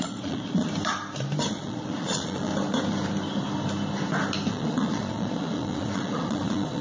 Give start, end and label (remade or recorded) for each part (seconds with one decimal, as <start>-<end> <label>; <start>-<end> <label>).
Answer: 0.0-0.7 remade; 0.7-1.5 recorded; 1.5-2.5 remade; 2.5-4.5 recorded; 4.5-6.8 remade